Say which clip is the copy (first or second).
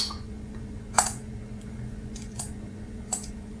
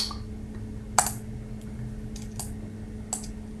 first